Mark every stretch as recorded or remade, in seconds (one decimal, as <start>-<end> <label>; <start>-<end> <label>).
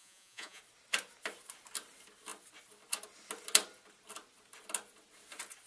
0.0-0.6 remade; 0.6-5.7 recorded